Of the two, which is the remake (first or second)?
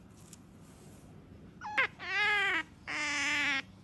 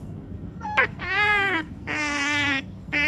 second